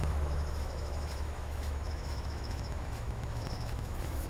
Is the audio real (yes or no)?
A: no